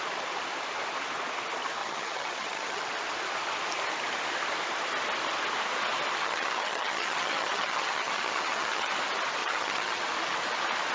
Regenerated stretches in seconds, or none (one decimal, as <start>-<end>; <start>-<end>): 1.8-2.8; 6.2-8.9; 9.4-10.0